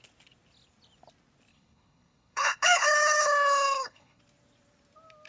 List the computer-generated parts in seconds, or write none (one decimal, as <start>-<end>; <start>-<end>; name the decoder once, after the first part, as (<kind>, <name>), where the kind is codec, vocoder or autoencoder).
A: 1.5-4.2 (codec, HILCodec)